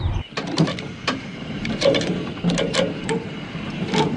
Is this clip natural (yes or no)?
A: no